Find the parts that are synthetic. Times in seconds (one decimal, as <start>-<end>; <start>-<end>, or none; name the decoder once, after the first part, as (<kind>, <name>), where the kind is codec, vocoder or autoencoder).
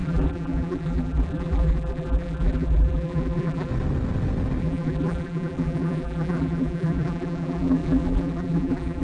0.0-3.7 (vocoder, BigVGAN v2); 4.6-9.0